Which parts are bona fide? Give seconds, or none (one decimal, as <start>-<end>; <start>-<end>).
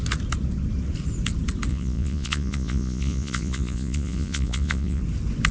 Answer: 0.0-1.7; 5.0-5.5